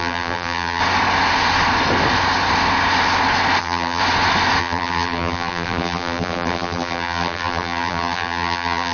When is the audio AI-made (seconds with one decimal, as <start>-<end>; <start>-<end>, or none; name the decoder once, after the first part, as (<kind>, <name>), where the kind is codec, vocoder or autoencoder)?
0.0-0.8 (vocoder, BigVGAN v2); 3.6-4.0; 4.6-8.9